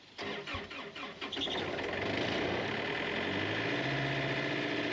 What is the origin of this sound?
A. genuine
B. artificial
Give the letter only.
A